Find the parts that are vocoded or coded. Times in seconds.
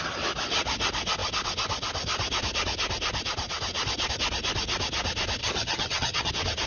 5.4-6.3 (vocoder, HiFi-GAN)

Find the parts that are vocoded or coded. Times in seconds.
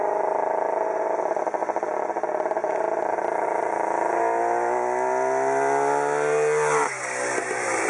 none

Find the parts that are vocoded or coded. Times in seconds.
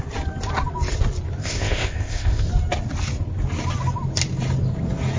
1.4-2.5 (codec, ZipCodec)